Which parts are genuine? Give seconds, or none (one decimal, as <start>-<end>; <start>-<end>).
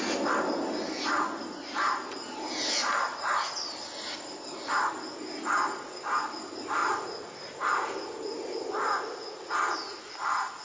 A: 0.0-10.6